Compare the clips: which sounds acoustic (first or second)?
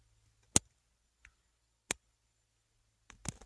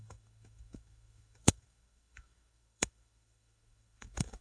first